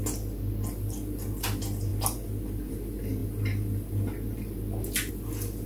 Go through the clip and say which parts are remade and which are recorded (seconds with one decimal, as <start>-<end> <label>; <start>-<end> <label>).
0.0-5.7 recorded